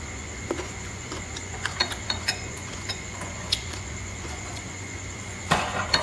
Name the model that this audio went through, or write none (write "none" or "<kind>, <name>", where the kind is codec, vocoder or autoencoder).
vocoder, Vocos